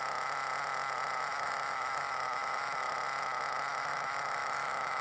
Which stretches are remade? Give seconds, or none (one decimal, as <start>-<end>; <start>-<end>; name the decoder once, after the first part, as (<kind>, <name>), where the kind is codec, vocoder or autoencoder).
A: 1.3-2.9 (autoencoder, DAC-VAE); 3.7-5.0

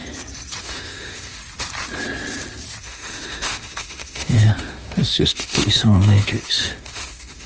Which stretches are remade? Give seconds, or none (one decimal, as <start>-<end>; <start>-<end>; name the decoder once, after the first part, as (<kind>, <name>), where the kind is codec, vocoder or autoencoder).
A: 0.6-1.4 (autoencoder, DAC-VAE); 2.8-7.5

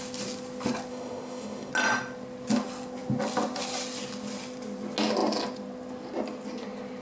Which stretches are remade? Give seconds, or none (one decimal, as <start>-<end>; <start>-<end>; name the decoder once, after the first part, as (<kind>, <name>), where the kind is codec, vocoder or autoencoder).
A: 0.9-1.7 (autoencoder, DAC-VAE)

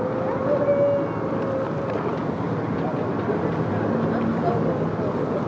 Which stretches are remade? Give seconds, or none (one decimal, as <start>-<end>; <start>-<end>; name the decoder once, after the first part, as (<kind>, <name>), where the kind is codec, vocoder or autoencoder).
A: none

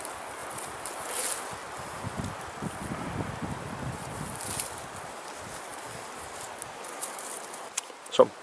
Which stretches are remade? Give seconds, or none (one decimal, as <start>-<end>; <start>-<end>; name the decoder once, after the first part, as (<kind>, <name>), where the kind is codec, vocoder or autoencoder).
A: none

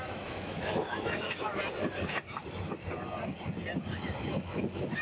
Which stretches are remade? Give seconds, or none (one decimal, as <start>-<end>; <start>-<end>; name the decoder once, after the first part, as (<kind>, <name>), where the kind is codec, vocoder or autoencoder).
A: 0.0-1.5 (autoencoder, DAC-VAE); 4.3-5.0